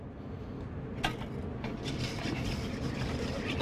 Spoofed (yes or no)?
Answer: no